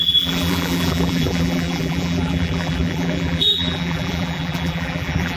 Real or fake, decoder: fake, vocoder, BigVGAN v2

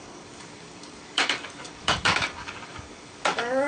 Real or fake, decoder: fake, codec, DAC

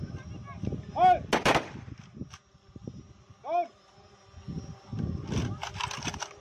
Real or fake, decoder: real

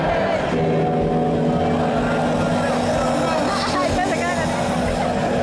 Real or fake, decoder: real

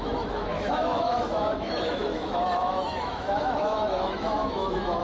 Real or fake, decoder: fake, autoencoder, DAC-VAE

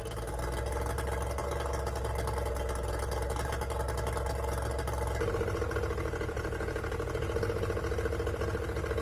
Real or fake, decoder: real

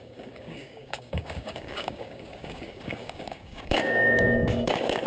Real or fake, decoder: fake, codec, DAC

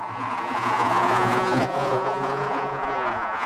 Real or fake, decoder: fake, vocoder, Vocos